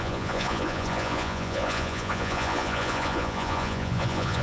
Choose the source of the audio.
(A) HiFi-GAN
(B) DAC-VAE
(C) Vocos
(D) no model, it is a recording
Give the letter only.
C